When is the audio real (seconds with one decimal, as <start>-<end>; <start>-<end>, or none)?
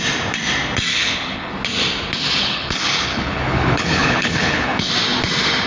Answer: 0.0-0.9; 1.5-2.4; 4.9-5.7